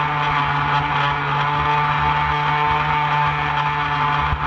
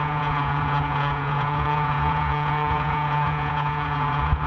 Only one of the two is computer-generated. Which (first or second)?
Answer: second